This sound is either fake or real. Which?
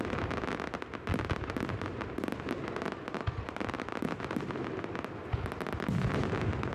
real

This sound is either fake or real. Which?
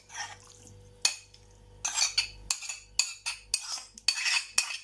real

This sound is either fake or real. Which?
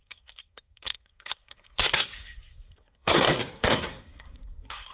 fake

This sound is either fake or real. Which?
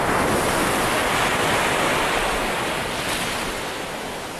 real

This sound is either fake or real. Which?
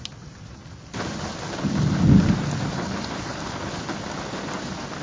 real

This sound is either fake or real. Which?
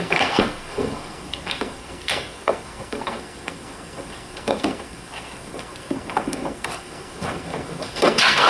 fake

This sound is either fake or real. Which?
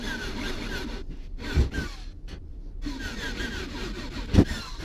real